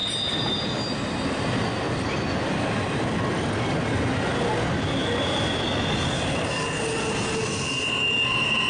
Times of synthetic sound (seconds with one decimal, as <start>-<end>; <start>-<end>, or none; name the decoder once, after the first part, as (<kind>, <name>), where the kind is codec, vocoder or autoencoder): none